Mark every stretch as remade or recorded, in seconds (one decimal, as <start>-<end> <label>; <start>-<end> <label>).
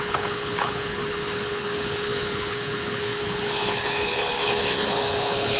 0.0-5.6 remade